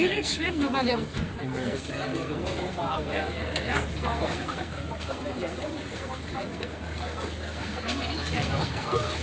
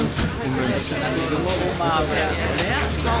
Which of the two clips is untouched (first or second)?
second